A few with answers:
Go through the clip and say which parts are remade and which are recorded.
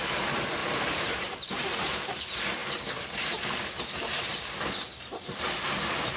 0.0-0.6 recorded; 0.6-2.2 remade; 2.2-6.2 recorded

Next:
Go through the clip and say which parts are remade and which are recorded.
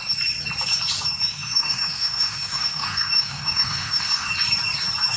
0.0-1.3 recorded; 1.3-4.3 remade; 4.3-5.2 recorded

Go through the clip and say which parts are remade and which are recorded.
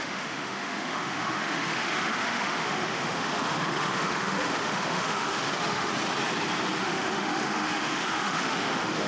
0.0-5.9 remade; 5.9-6.8 recorded; 6.8-9.1 remade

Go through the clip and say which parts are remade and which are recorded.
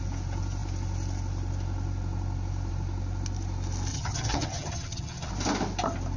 0.0-3.9 recorded; 3.9-5.3 remade; 5.3-6.2 recorded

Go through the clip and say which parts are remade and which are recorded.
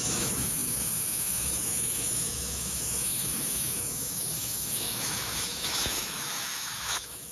0.0-7.3 remade